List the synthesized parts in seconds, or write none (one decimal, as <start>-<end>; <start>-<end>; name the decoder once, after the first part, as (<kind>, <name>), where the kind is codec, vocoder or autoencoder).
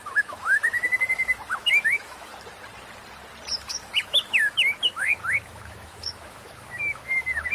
0.0-2.3 (autoencoder, DAC-VAE); 3.5-7.5